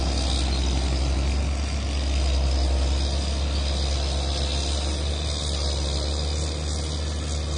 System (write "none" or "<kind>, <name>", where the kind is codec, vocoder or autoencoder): none